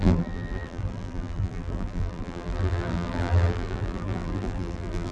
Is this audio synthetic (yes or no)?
yes